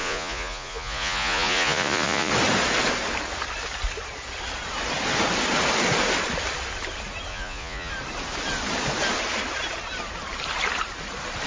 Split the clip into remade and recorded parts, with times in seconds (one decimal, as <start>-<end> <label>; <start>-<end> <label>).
0.0-2.3 remade; 2.3-7.3 recorded; 7.3-7.9 remade; 7.9-11.5 recorded